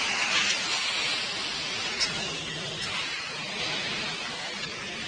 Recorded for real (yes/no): yes